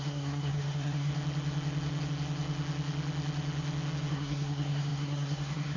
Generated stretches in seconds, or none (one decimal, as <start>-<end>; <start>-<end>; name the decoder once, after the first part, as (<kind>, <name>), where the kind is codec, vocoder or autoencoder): 0.0-1.1 (codec, SNAC); 4.1-5.8